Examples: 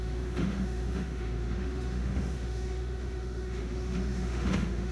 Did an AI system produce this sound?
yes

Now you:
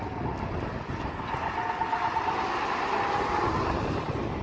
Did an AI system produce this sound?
no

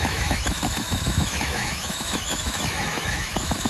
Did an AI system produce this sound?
yes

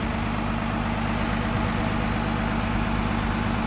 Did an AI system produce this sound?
no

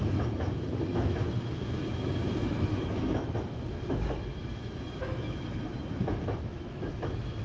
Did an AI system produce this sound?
yes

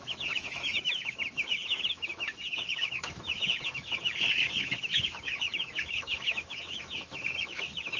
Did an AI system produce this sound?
yes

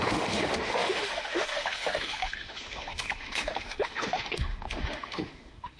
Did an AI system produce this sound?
yes